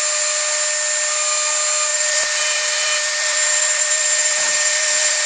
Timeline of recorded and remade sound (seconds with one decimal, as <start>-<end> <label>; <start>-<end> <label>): 0.0-1.9 recorded; 1.9-5.3 remade